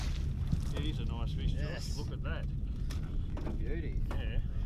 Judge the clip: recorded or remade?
recorded